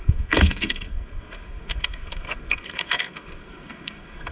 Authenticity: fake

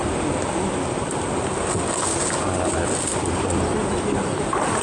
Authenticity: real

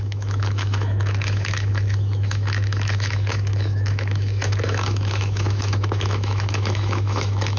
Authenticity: fake